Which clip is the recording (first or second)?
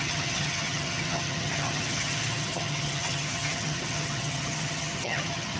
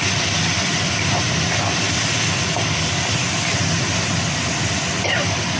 second